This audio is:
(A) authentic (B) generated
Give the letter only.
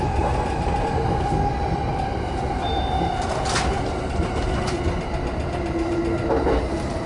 A